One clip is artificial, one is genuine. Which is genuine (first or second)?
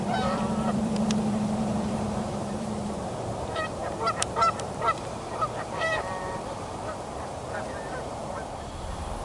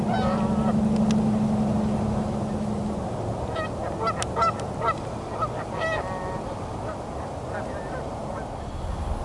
second